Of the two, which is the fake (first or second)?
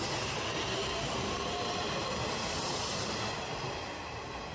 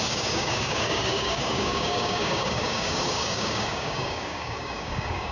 second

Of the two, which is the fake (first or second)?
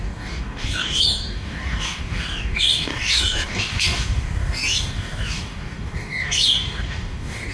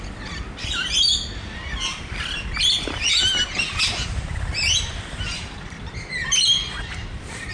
first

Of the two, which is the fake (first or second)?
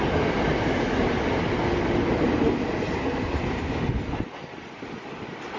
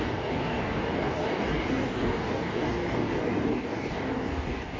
second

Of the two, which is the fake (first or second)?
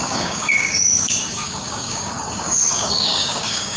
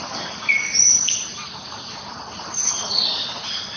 first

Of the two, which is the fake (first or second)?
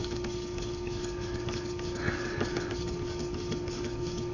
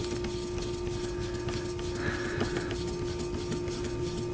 first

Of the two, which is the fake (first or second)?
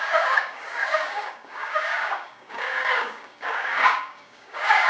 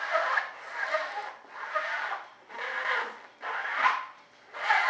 first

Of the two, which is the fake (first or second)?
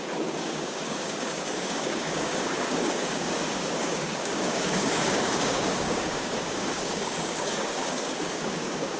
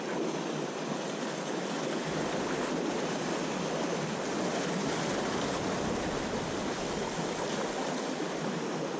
first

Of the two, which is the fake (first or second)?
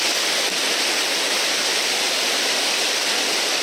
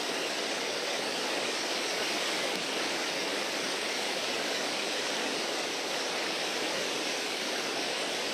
second